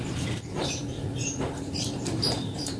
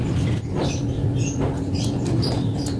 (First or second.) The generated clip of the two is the first